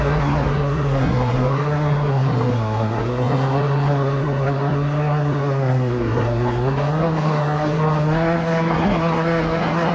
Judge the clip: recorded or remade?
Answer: remade